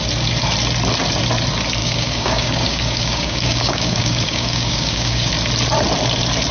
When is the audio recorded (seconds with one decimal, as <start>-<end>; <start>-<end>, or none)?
0.0-1.8; 5.3-6.5